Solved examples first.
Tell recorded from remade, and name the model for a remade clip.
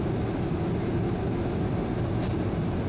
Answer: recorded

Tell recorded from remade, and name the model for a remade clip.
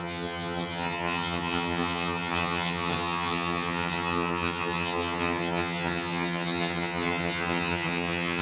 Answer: remade, vocoder, HiFi-GAN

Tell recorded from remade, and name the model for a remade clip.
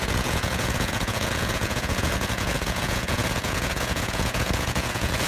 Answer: remade, vocoder, Vocos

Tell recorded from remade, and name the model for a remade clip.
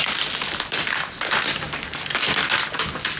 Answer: recorded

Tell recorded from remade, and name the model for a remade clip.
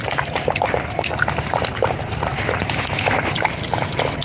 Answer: recorded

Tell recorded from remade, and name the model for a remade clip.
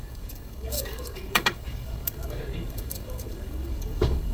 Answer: remade, codec, DAC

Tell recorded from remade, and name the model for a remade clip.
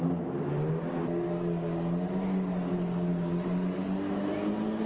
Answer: recorded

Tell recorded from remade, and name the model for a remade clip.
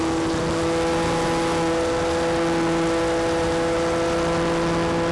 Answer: recorded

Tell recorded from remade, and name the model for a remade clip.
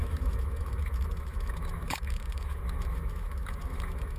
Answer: remade, autoencoder, DAC-VAE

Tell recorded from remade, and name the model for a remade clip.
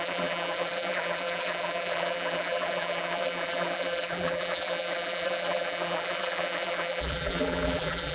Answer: remade, vocoder, BigVGAN v2